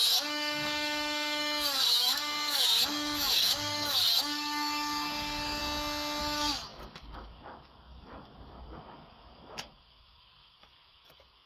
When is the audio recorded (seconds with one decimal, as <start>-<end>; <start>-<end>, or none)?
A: 5.6-6.2